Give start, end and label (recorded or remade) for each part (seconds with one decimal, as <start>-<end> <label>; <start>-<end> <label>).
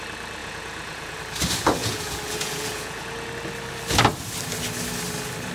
0.0-0.4 recorded; 0.4-1.2 remade; 1.2-1.8 recorded; 1.8-3.3 remade; 3.3-5.5 recorded